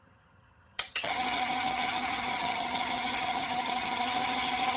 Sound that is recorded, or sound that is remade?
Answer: remade